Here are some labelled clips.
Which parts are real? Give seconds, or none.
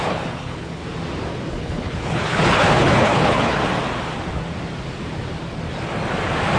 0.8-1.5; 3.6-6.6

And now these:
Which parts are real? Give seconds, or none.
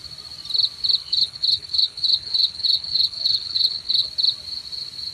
0.0-1.0; 4.1-5.1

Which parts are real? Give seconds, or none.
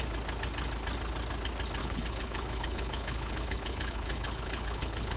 0.0-1.8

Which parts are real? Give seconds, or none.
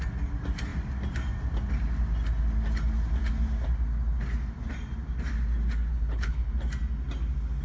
0.0-5.9; 6.5-7.6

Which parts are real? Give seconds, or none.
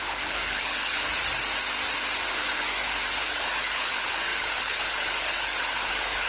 1.2-2.3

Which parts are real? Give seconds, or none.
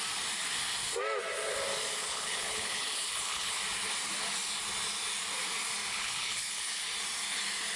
0.0-2.0; 3.6-5.9; 6.8-7.8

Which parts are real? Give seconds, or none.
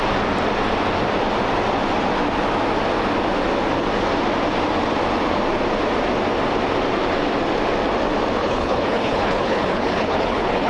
0.0-8.4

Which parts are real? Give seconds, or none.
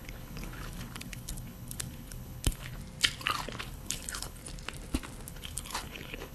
2.8-3.6; 4.4-5.3